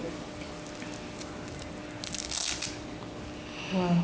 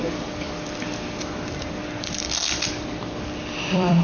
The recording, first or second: first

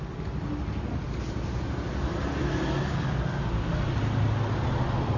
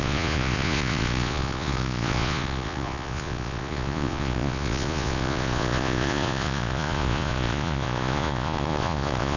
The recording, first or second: first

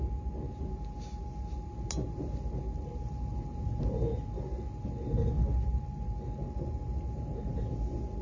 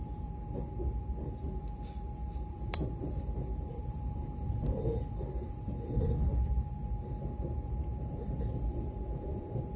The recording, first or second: first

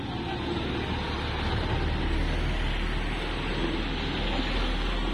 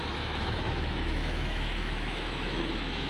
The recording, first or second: first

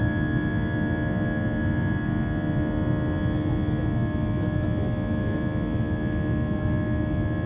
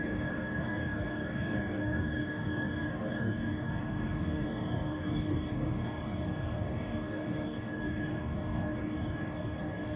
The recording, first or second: first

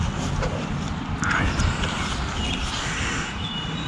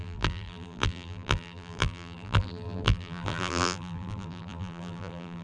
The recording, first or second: first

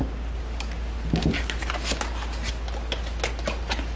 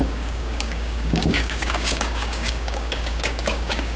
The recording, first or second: first